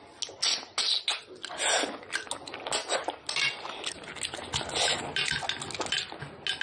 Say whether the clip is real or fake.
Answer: real